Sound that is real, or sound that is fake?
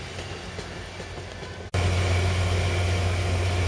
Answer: real